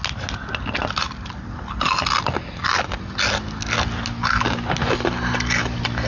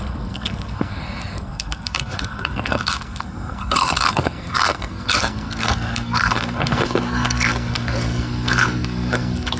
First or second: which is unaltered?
first